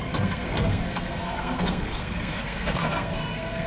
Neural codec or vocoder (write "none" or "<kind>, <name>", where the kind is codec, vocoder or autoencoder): codec, SNAC